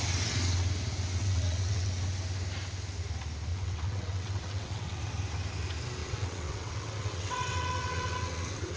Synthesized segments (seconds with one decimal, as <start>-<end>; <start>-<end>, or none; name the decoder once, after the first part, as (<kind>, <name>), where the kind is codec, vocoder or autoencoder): 1.2-1.9 (vocoder, WaveNeXt); 3.5-5.0; 6.0-8.8